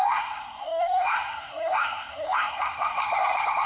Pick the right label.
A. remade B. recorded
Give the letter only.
A